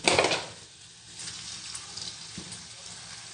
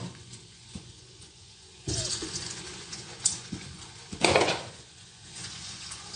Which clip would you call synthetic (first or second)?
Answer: second